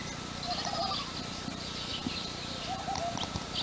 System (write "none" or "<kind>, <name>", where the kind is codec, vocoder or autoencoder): none